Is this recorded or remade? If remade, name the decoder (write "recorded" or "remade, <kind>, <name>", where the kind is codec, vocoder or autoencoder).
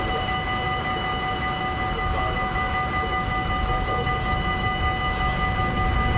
remade, autoencoder, DAC-VAE